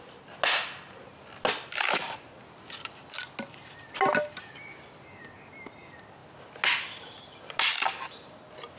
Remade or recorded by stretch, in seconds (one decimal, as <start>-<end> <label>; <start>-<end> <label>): 0.0-8.8 recorded